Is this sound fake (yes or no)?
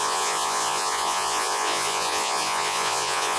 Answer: yes